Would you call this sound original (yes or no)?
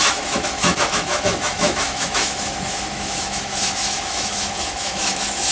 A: no